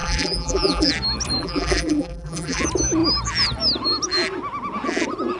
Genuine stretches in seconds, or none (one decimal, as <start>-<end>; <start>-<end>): 0.9-1.4; 2.6-5.4